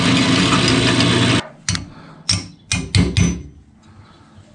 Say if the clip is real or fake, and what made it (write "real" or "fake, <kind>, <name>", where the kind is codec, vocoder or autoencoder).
real